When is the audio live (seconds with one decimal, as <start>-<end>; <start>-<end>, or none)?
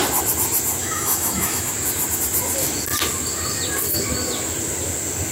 0.0-0.8; 1.7-5.3